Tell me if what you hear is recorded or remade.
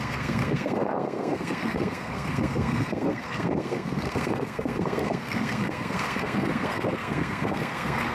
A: remade